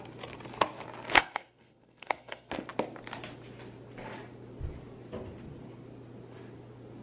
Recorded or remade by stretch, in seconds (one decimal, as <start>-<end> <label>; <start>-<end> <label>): 0.0-1.2 recorded; 1.2-2.5 remade; 2.5-7.0 recorded